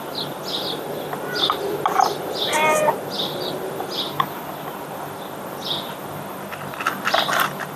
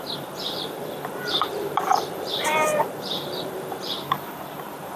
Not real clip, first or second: second